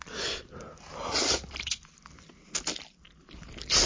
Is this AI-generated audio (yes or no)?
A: no